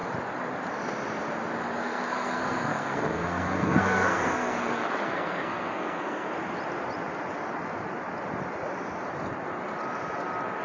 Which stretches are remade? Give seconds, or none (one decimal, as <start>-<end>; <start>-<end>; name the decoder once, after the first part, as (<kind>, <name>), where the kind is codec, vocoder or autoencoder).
1.8-6.3 (codec, SNAC)